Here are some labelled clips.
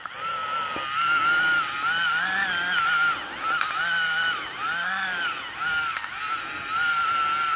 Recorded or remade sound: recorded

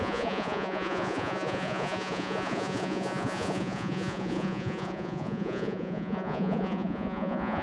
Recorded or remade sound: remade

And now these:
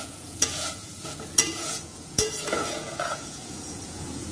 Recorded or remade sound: remade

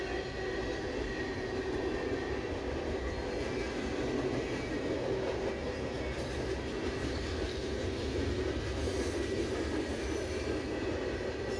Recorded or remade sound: recorded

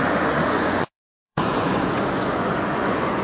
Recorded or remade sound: remade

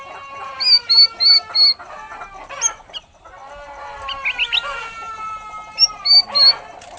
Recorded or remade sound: recorded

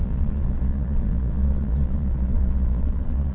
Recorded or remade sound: remade